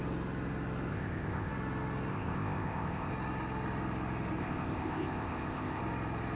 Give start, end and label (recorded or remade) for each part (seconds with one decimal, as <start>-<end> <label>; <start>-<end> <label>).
0.0-0.9 recorded; 0.9-1.5 remade; 1.5-2.1 recorded; 2.1-3.1 remade; 3.1-4.4 recorded; 4.4-5.8 remade; 5.8-6.4 recorded